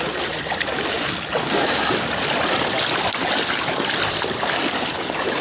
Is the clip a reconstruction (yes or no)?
no